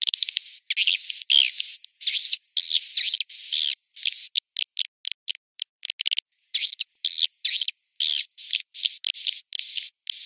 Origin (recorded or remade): recorded